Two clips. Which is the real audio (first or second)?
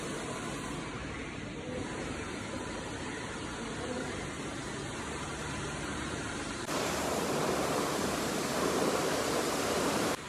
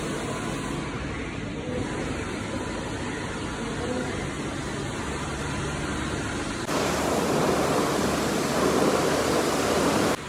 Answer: second